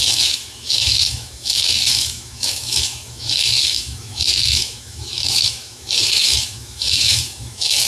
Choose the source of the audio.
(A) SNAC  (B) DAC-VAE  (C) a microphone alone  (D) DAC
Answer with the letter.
B